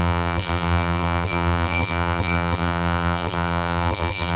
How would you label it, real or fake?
fake